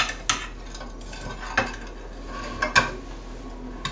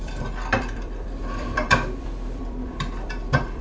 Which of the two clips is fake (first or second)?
second